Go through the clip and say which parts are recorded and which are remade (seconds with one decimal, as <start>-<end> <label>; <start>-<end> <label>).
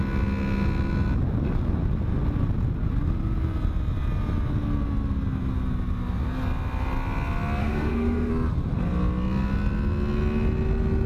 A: 0.0-7.6 recorded; 7.6-8.3 remade; 8.3-11.1 recorded